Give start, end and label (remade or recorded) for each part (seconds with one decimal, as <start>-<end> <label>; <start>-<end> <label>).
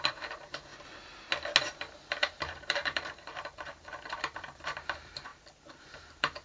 0.0-0.7 remade; 0.7-1.6 recorded; 1.6-5.3 remade; 5.3-5.8 recorded; 5.8-6.4 remade